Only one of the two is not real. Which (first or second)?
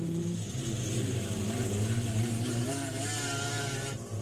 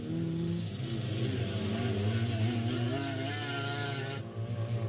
first